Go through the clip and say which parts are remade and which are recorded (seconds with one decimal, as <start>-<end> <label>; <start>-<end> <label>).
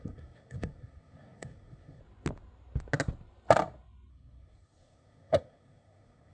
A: 0.0-2.0 remade; 2.0-4.1 recorded; 4.1-6.3 remade